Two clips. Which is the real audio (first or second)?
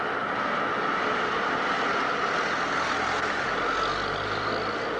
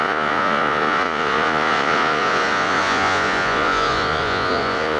first